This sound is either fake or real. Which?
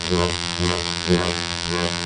fake